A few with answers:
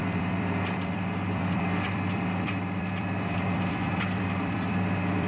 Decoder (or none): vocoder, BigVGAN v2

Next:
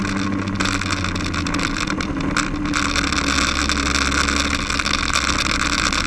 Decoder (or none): none